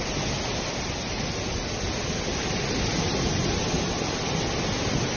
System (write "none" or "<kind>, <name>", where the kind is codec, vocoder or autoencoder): none